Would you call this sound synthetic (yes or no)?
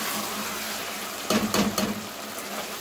no